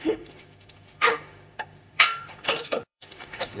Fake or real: fake